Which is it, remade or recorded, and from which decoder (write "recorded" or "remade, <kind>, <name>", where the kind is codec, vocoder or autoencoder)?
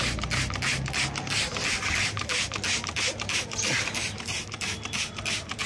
recorded